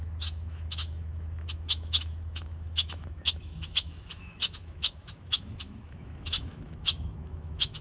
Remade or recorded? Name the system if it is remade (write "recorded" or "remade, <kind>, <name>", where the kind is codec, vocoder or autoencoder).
remade, autoencoder, DAC-VAE